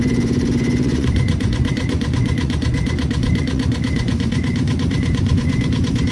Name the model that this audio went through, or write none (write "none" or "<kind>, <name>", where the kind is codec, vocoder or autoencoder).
vocoder, Vocos